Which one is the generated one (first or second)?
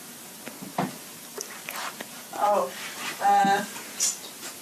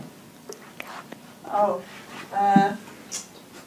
first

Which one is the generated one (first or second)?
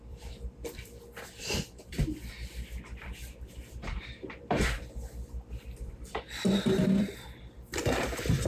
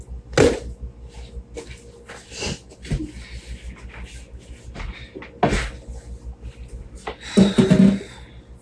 first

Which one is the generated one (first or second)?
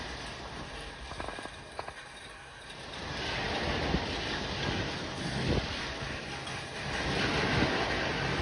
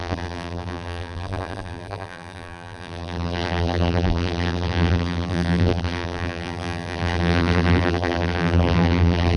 second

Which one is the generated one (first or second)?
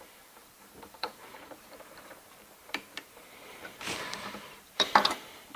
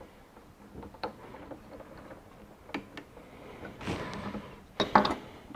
first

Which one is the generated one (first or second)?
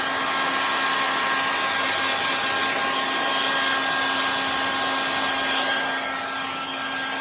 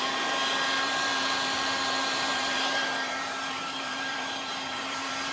second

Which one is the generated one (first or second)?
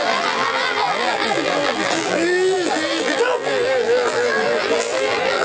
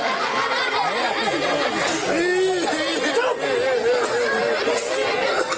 first